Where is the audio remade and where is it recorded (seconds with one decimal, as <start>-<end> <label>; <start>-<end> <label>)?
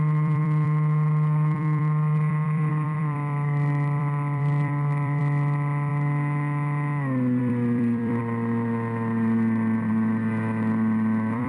0.0-5.9 remade; 5.9-7.4 recorded; 7.4-11.5 remade